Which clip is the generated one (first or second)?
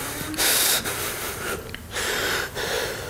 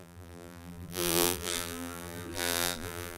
second